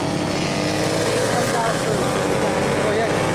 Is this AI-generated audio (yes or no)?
no